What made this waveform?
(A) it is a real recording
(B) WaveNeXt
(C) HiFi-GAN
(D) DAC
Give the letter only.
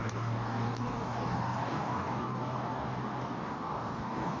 D